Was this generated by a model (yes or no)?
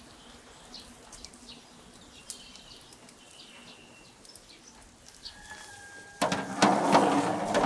no